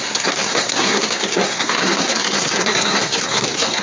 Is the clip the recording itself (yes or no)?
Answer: no